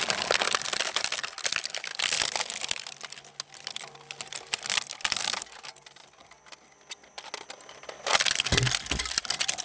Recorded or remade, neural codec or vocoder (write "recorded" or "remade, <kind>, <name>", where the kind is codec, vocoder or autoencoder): recorded